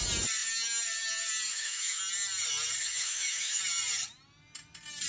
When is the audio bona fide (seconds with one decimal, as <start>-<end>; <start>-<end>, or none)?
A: 0.0-1.5; 2.0-2.8; 3.6-5.1